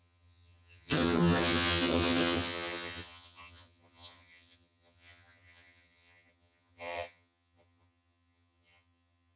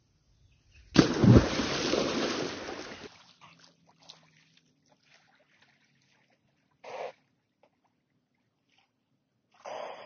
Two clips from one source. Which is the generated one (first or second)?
first